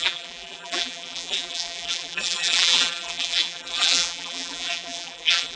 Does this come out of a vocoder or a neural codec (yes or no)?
yes